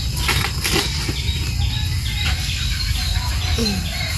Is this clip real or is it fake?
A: real